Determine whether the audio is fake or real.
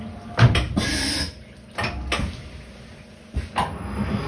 real